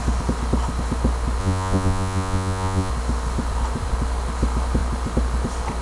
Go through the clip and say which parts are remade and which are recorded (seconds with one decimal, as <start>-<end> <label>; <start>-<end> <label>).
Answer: 0.0-1.4 recorded; 1.4-2.9 remade; 2.9-5.8 recorded